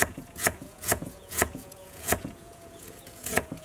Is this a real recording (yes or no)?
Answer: no